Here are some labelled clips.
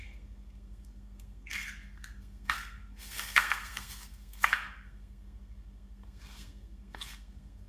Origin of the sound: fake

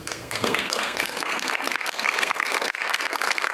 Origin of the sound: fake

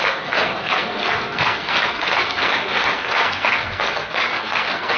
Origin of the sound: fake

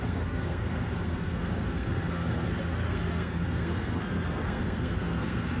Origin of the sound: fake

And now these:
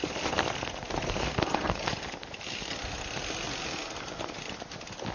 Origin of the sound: real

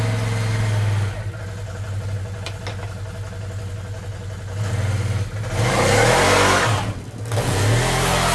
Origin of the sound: real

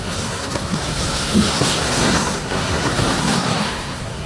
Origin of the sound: fake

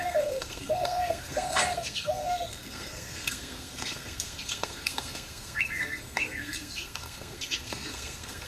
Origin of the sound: fake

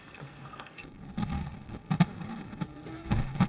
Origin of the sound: fake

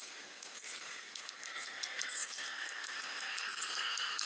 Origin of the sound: fake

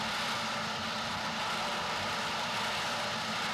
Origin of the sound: real